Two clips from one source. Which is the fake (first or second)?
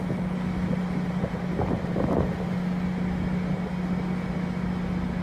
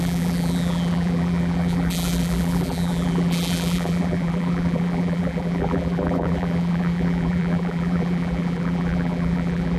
second